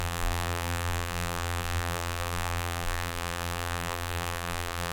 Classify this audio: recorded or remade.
remade